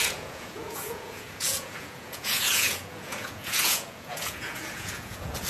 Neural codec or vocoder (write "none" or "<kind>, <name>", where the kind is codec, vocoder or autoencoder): vocoder, Vocos